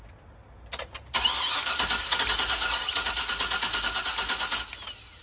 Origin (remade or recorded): recorded